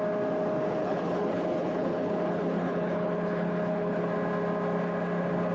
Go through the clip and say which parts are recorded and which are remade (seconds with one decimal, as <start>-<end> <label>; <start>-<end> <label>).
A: 0.0-0.8 recorded; 0.8-4.1 remade; 4.1-5.5 recorded